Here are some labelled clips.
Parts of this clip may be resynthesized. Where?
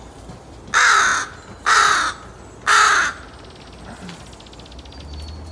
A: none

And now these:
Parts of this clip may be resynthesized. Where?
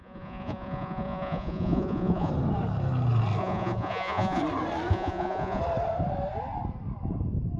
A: 0.0-2.3 (vocoder, Vocos); 3.4-4.4; 4.9-5.6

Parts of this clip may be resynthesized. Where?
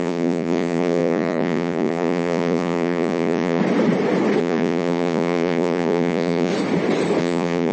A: 0.0-3.6 (vocoder, Vocos); 4.4-6.5; 7.2-7.7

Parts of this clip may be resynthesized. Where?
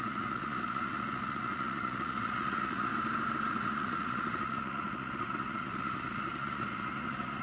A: 0.0-2.9 (vocoder, Vocos); 3.5-7.4